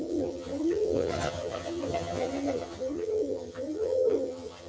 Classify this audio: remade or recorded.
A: remade